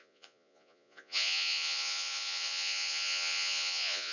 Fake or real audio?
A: fake